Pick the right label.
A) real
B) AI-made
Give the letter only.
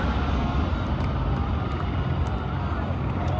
A